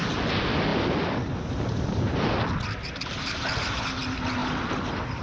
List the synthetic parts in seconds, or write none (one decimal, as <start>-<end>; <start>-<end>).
none